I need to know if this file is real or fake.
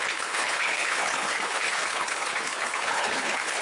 fake